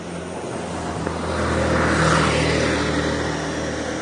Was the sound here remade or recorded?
recorded